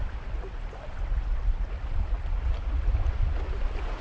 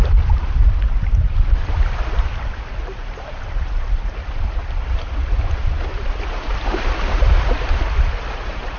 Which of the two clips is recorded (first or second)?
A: first